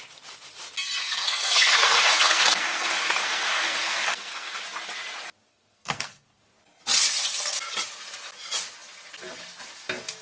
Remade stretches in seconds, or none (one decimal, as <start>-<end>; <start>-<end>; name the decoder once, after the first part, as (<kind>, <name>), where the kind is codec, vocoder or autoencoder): 1.0-4.6 (codec, SNAC); 5.5-6.4